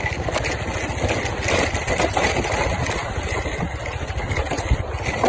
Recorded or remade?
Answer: recorded